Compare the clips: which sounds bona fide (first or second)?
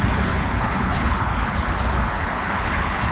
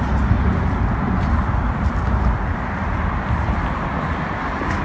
second